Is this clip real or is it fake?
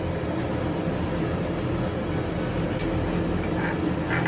real